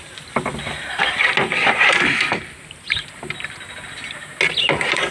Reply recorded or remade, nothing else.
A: recorded